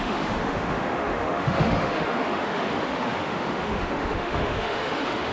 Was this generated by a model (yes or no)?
yes